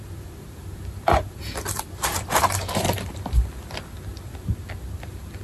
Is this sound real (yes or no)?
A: yes